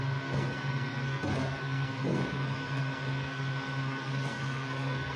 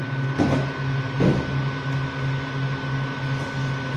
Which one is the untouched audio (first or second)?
second